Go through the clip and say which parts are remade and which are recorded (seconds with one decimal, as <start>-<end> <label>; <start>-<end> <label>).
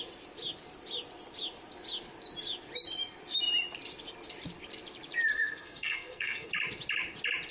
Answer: 0.0-5.3 recorded; 5.3-6.5 remade; 6.5-7.5 recorded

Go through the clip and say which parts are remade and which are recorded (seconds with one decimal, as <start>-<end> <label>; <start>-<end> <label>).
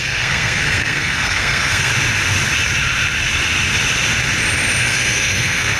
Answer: 0.0-1.9 remade; 1.9-4.8 recorded; 4.8-5.8 remade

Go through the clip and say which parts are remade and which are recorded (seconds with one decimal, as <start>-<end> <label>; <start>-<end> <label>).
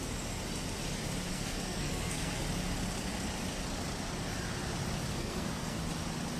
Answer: 0.0-1.3 recorded; 1.3-2.4 remade; 2.4-5.1 recorded; 5.1-5.8 remade; 5.8-6.4 recorded